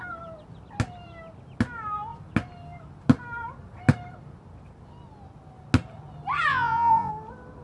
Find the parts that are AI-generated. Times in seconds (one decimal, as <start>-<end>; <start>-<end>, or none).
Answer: 6.5-7.1